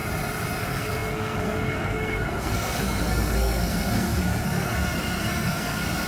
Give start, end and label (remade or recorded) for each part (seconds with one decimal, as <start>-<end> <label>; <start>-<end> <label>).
0.0-0.6 recorded; 0.6-6.1 remade